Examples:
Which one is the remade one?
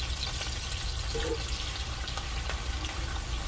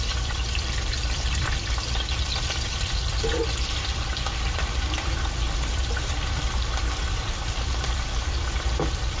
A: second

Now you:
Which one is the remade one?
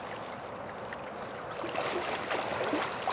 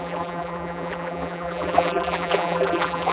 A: second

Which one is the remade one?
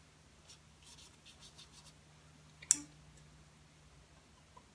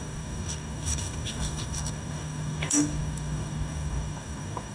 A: second